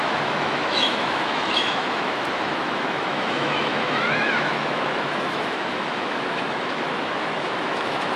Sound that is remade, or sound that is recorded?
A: remade